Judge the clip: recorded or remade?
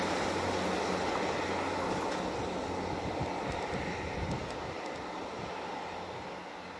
recorded